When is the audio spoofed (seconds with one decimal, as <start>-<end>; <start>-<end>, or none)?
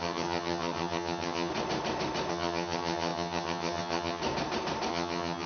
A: 0.0-1.5; 2.3-4.2; 4.9-5.5